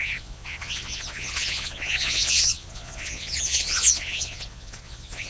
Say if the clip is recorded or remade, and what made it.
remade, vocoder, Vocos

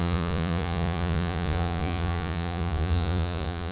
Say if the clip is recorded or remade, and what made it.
remade, vocoder, Vocos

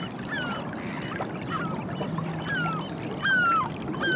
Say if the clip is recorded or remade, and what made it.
recorded